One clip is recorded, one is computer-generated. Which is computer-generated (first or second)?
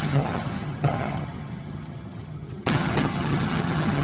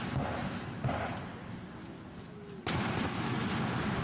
first